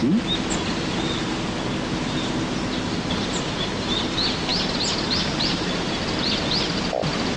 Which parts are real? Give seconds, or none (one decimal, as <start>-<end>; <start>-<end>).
0.0-7.4